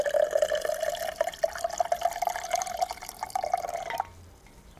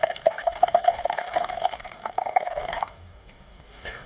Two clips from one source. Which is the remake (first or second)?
second